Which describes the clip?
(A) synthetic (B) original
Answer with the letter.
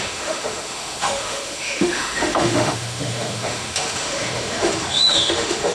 A